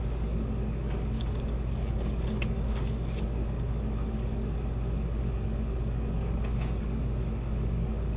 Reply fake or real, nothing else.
fake